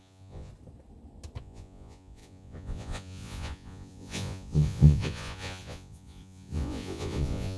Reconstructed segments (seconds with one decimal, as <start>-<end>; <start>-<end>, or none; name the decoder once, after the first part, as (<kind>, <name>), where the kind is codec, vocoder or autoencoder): 0.0-0.5 (vocoder, Vocos); 1.4-7.6